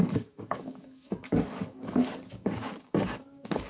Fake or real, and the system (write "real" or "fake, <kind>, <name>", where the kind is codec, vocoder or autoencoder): fake, codec, DAC